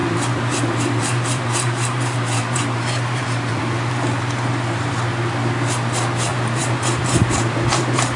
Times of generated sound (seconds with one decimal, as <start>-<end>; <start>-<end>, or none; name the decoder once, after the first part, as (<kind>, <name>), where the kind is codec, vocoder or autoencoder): 0.0-4.9 (vocoder, BigVGAN v2); 6.3-8.2